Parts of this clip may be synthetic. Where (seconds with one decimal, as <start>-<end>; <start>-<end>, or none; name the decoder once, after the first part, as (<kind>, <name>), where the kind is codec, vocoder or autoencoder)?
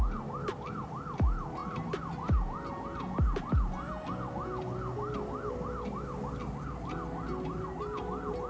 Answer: none